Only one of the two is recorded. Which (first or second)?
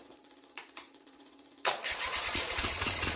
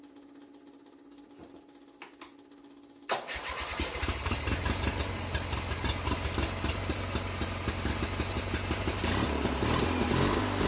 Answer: second